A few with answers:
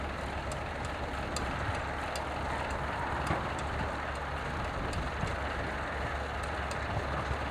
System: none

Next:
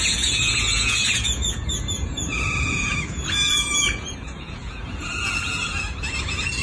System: vocoder, Vocos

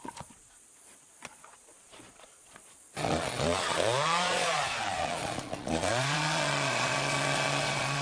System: vocoder, Vocos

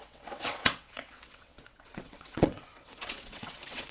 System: vocoder, WaveNeXt